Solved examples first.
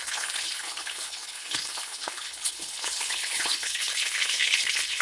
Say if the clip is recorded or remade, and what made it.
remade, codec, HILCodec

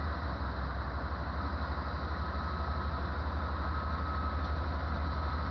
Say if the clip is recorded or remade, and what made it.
recorded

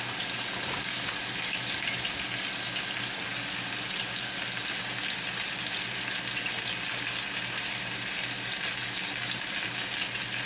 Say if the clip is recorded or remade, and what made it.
recorded